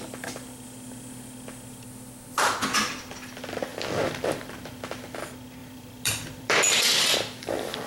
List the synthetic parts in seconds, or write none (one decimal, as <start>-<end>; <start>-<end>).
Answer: 3.7-4.7; 5.6-7.9

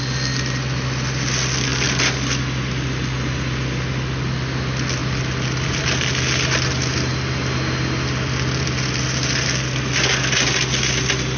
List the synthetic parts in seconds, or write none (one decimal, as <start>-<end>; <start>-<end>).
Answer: none

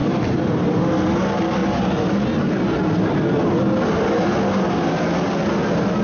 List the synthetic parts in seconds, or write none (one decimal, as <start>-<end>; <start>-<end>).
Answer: 0.0-0.9; 1.6-2.2

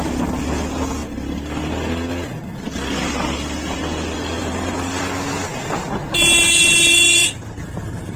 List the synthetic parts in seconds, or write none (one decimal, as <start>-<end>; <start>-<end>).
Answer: 4.4-5.0; 7.2-8.2

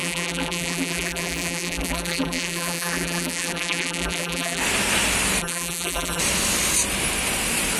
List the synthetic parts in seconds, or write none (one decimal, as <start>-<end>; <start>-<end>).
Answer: 0.0-4.6; 5.4-6.2

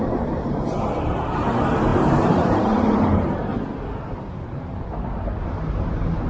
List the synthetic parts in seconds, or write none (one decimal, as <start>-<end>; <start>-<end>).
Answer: 0.0-3.5; 5.6-6.3

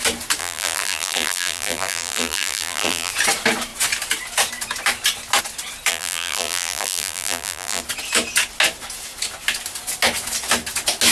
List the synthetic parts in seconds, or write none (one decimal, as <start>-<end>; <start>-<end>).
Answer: 0.4-3.1; 5.9-7.8